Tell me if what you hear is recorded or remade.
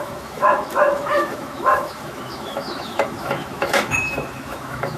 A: remade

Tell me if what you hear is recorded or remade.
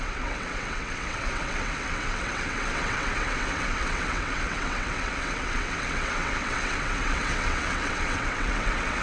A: remade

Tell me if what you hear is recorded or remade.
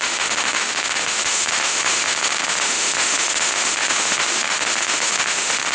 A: remade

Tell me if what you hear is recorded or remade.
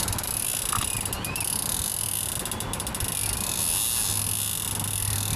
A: recorded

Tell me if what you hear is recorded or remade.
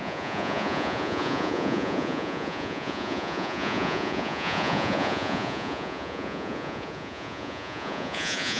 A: remade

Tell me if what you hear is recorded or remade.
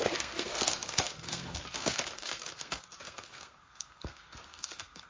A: remade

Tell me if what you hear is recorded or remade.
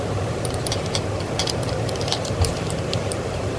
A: remade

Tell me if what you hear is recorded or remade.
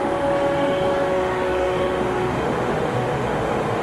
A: remade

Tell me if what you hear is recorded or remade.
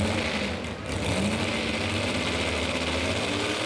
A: recorded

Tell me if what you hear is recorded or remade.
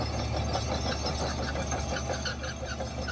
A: recorded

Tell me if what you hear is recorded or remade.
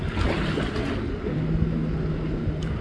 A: recorded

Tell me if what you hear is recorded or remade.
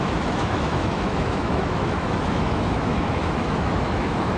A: remade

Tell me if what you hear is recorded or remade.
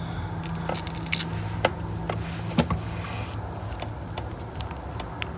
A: recorded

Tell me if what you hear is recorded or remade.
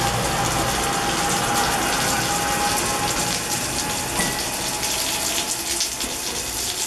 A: recorded